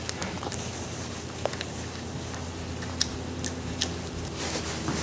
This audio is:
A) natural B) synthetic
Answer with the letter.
A